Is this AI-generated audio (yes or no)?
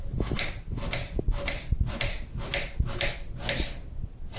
no